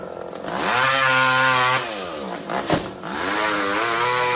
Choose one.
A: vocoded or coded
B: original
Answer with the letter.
B